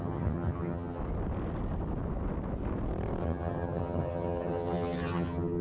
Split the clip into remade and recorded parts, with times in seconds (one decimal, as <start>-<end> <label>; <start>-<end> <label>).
0.0-1.0 remade; 1.0-3.2 recorded; 3.2-5.6 remade